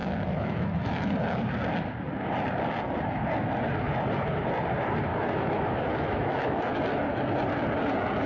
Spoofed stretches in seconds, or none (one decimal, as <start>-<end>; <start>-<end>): 0.0-1.1; 5.1-6.8